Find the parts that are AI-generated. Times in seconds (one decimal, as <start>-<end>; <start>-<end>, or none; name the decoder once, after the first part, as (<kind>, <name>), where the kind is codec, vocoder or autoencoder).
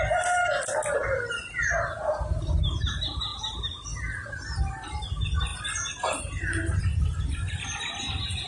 none